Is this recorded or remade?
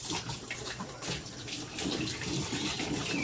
recorded